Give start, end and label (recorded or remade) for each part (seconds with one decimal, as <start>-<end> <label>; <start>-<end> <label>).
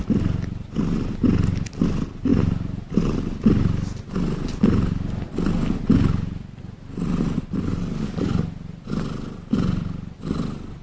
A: 0.0-10.8 recorded